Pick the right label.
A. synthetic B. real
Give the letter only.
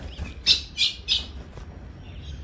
B